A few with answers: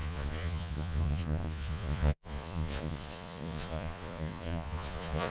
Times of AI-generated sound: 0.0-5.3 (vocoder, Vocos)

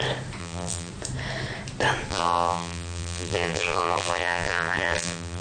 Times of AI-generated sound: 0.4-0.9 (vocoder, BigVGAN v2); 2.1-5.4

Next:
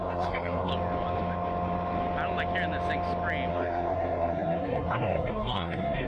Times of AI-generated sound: 0.0-0.7 (codec, SNAC); 3.5-6.1

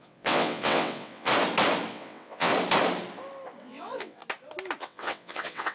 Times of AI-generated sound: 0.0-1.3 (vocoder, WaveNeXt); 1.9-2.5; 3.6-4.2; 4.8-5.7